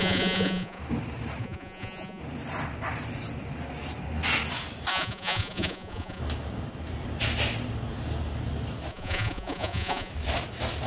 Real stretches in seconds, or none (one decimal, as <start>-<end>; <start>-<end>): 0.8-1.4; 2.2-4.9; 6.2-8.9; 10.1-10.9